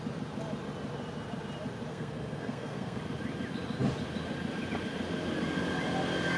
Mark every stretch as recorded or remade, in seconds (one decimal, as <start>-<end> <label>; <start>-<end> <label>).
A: 0.0-1.9 recorded; 1.9-3.0 remade; 3.0-6.4 recorded